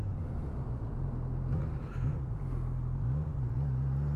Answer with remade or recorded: recorded